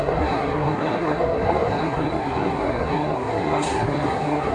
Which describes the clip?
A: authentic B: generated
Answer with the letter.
B